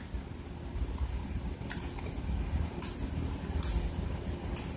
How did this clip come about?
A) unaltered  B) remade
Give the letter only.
A